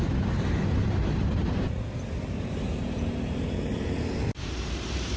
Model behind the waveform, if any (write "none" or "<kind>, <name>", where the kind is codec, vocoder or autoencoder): vocoder, BigVGAN v2